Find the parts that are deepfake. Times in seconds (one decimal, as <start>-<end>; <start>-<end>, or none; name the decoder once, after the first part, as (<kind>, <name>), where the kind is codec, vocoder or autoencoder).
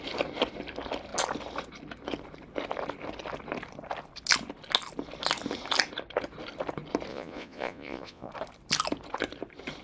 7.1-8.3 (vocoder, Vocos)